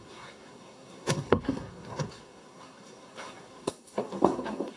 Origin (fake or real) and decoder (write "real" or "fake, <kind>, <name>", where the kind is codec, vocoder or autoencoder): fake, codec, SNAC